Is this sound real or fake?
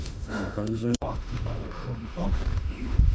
fake